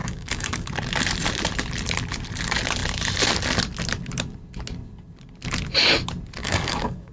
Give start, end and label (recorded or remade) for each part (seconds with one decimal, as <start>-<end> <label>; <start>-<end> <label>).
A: 0.0-0.7 remade; 0.7-6.4 recorded; 6.4-7.1 remade